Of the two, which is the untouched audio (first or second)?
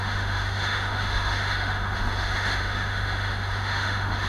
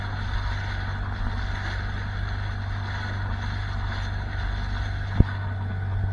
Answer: second